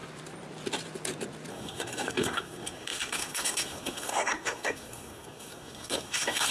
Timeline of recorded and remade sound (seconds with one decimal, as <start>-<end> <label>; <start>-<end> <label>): 0.0-1.5 recorded; 1.5-6.5 remade